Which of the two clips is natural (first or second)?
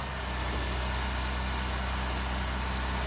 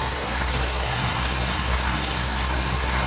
first